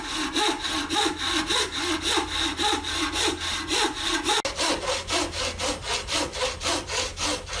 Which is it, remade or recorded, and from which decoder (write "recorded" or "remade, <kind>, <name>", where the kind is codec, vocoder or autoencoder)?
recorded